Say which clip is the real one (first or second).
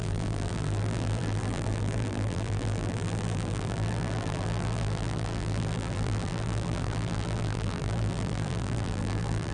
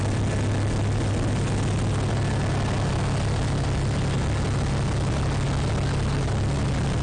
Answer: second